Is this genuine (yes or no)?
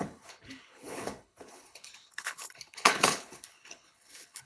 no